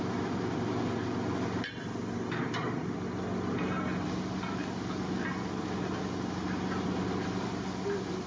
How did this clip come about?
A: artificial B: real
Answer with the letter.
B